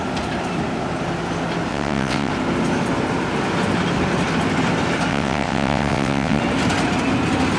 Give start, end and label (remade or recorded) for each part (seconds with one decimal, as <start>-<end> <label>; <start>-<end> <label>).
0.0-1.7 recorded; 1.7-2.3 remade; 2.3-5.1 recorded; 5.1-6.4 remade; 6.4-7.6 recorded